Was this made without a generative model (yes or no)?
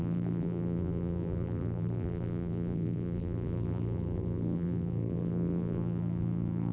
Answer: no